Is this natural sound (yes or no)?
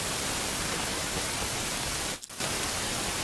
yes